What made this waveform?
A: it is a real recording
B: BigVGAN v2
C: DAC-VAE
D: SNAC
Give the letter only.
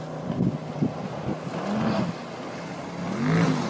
A